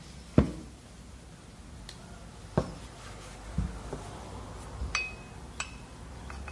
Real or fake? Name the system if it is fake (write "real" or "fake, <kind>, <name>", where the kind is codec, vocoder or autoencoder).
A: real